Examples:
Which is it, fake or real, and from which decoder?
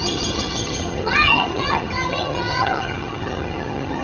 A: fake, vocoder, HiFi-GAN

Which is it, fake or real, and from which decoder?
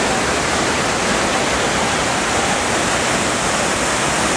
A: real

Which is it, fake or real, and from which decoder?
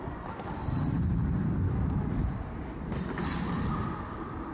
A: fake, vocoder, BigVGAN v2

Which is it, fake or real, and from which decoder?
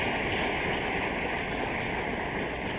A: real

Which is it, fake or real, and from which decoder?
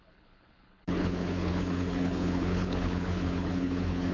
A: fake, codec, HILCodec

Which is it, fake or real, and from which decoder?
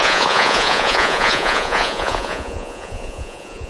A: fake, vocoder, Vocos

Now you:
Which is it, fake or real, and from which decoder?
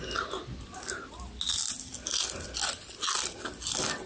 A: real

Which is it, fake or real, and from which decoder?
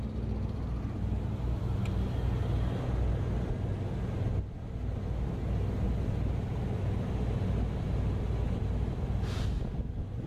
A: real